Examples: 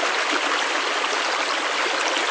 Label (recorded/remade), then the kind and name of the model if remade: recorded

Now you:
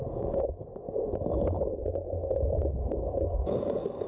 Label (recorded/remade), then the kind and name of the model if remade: remade, codec, DAC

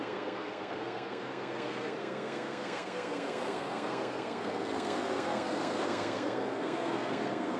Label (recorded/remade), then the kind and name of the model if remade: remade, codec, SNAC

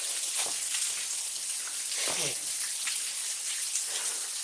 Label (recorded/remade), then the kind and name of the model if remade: recorded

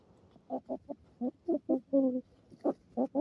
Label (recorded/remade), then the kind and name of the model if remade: recorded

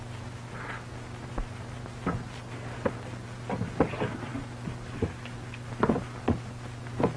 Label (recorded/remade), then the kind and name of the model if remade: recorded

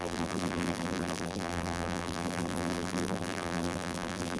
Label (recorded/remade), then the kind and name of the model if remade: remade, vocoder, BigVGAN v2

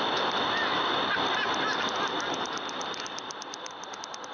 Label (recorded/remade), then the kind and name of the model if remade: recorded